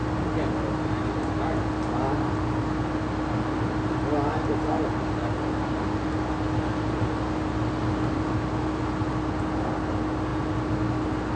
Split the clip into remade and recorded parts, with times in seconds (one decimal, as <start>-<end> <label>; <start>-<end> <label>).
0.0-11.4 recorded